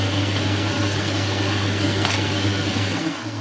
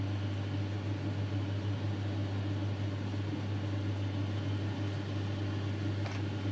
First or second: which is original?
second